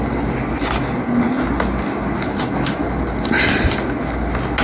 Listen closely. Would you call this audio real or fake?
real